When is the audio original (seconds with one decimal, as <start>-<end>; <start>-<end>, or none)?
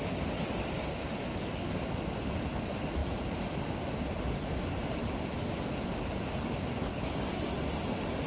0.0-1.3; 1.9-6.9; 7.4-8.3